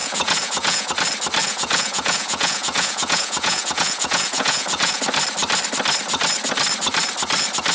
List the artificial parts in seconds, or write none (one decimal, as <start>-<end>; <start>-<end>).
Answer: 0.0-0.9; 1.4-5.0